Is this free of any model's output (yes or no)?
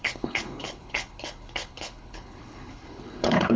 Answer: no